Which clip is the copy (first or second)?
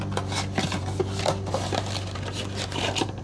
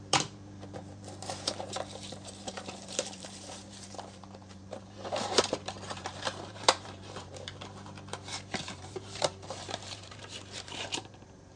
second